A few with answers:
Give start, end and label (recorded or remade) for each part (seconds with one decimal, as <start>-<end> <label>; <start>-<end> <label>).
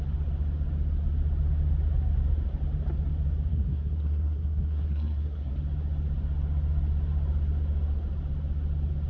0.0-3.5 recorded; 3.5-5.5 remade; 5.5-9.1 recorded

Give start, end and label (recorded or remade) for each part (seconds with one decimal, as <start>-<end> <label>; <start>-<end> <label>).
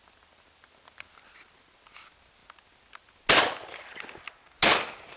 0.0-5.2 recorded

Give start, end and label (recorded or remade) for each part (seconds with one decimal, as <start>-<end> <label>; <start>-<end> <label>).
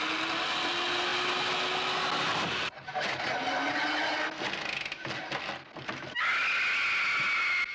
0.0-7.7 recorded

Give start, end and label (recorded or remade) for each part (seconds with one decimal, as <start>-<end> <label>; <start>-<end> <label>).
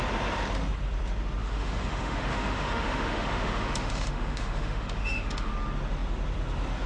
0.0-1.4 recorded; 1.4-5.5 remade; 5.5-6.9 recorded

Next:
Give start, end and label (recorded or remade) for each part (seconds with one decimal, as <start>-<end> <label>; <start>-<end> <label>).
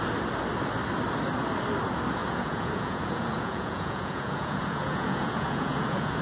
0.0-2.2 recorded; 2.2-6.2 remade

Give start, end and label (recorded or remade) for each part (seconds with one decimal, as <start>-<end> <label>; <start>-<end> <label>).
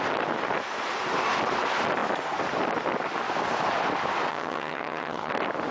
0.0-4.3 recorded; 4.3-5.3 remade; 5.3-5.7 recorded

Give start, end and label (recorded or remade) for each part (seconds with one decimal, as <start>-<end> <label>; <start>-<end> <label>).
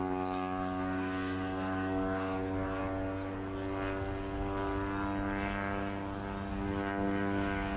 0.0-2.8 remade; 2.8-6.5 recorded; 6.5-7.8 remade